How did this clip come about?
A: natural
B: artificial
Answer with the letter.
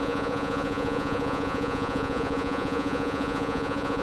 B